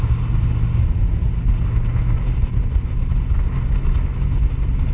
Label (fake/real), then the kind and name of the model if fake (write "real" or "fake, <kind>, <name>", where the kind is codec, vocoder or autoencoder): real